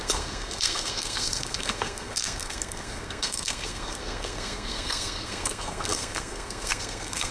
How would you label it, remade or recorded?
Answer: remade